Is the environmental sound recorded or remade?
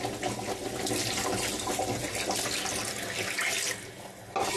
recorded